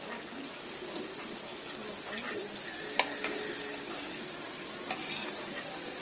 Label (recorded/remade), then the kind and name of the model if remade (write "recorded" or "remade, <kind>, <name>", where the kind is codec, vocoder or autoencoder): recorded